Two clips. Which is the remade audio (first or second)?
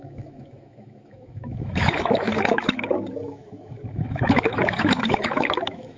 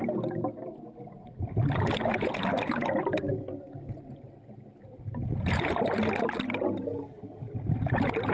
first